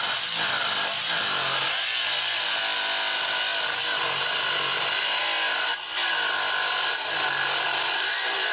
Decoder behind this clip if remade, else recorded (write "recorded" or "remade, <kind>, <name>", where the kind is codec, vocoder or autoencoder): recorded